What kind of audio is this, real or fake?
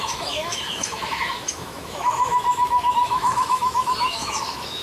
fake